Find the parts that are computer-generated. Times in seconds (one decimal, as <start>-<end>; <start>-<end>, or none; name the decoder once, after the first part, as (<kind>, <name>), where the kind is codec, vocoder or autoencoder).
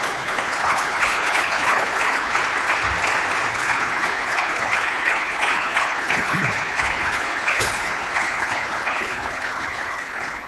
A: 0.0-2.4 (codec, HILCodec); 3.5-10.5